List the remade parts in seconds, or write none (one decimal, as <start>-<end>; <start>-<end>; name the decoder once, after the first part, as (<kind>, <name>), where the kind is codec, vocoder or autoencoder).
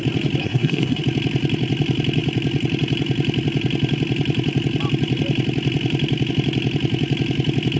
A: 0.4-1.0 (codec, SNAC)